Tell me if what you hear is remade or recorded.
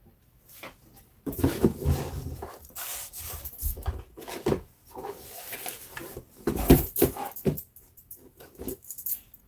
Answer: remade